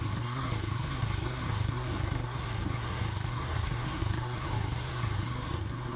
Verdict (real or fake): fake